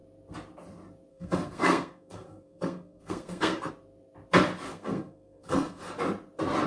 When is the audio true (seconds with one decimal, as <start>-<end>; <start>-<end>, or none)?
0.0-1.1; 3.7-4.7; 5.9-6.7